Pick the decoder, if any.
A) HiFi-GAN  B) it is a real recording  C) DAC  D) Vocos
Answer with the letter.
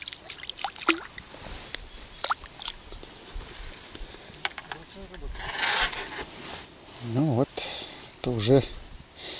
B